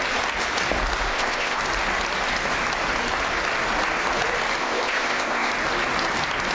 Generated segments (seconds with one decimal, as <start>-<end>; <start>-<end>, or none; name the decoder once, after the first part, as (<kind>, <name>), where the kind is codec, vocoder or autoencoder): 1.1-1.6 (codec, ZipCodec); 4.6-5.5